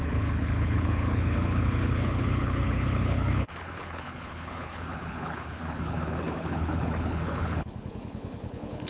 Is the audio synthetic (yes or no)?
yes